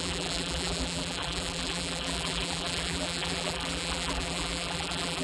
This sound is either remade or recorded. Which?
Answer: remade